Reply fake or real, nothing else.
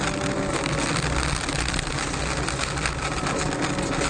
real